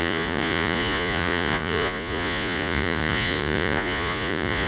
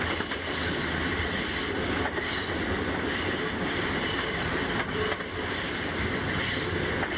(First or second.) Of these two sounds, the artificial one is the first